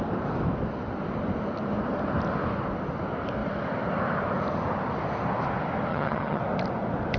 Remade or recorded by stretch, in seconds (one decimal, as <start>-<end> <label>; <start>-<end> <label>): 0.0-5.9 recorded; 5.9-6.4 remade; 6.4-7.2 recorded